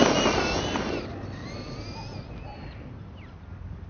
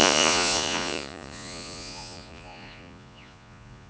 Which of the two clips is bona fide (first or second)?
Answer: first